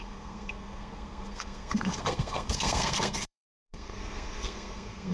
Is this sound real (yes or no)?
no